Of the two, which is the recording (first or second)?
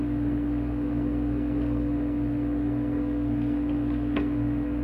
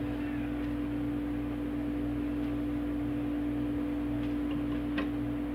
second